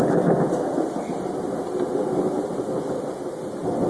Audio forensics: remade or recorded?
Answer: recorded